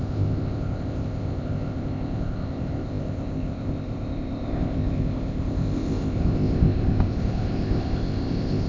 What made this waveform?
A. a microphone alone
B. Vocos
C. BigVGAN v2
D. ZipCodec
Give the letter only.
D